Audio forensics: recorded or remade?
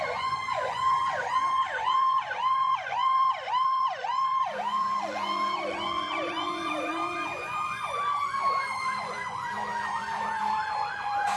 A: remade